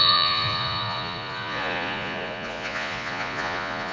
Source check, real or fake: fake